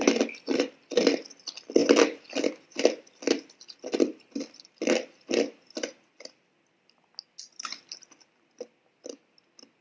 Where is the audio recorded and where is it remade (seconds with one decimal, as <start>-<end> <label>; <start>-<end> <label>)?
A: 0.0-9.8 recorded